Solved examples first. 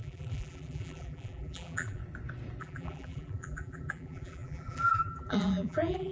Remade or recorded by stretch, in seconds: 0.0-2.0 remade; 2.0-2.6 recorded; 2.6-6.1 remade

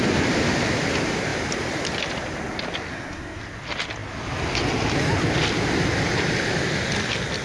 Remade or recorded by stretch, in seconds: 0.0-2.9 recorded; 2.9-3.4 remade; 3.4-7.4 recorded

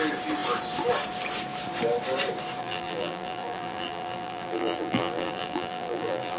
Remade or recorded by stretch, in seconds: 0.0-2.6 recorded; 2.6-6.4 remade

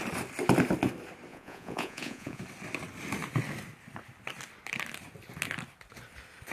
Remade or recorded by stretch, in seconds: 0.0-1.3 recorded; 1.3-2.4 remade; 2.4-6.5 recorded

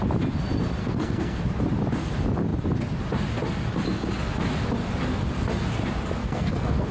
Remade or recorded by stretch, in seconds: 0.0-0.8 recorded; 0.8-1.4 remade; 1.4-6.2 recorded; 6.2-6.9 remade

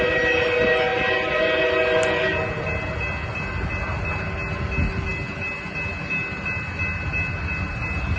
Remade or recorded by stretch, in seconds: 0.0-8.2 recorded

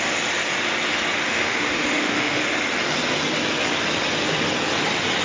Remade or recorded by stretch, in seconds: 0.0-1.3 recorded; 1.3-2.4 remade; 2.4-5.2 recorded

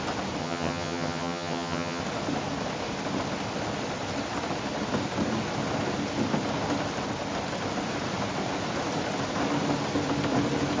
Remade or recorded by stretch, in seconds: 0.0-0.4 recorded; 0.4-2.0 remade; 2.0-10.8 recorded